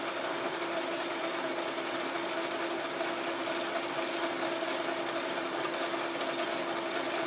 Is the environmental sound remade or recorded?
recorded